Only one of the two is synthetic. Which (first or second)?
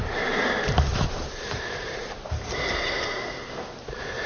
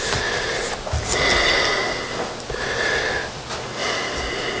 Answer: first